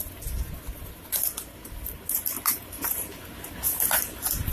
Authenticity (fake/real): real